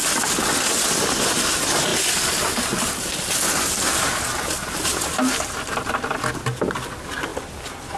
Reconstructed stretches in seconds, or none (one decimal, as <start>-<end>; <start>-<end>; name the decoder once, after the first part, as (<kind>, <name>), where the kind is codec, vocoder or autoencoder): none